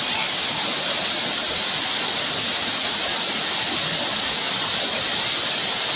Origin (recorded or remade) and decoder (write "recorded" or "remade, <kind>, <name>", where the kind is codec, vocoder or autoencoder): recorded